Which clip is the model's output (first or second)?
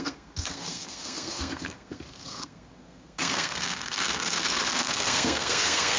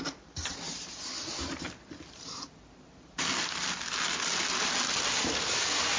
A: first